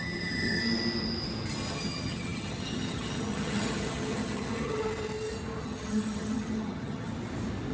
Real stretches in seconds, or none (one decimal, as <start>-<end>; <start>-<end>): 0.6-1.7; 4.8-5.6; 7.1-7.7